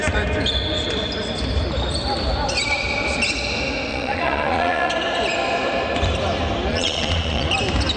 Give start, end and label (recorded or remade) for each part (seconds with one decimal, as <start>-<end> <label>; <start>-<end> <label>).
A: 0.0-3.9 recorded; 3.9-4.9 remade; 4.9-6.7 recorded; 6.7-7.5 remade; 7.5-8.0 recorded